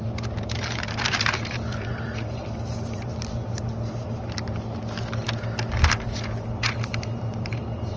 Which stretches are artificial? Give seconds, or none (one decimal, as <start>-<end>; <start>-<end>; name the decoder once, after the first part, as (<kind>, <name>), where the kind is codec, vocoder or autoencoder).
0.0-4.5 (vocoder, BigVGAN v2); 7.1-8.0